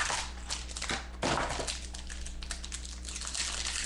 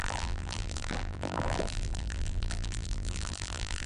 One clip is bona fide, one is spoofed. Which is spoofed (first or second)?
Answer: second